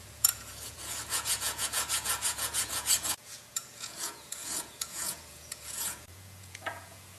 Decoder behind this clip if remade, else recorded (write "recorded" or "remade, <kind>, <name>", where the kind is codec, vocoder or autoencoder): remade, vocoder, Vocos